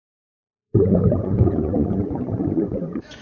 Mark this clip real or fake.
fake